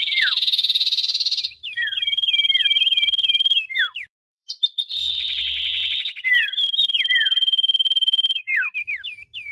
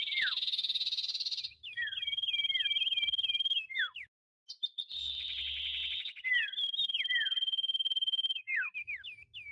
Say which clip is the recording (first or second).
second